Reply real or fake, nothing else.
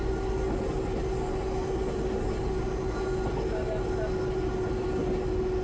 real